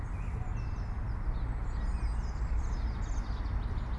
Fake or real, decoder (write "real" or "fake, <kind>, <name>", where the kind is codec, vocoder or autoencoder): real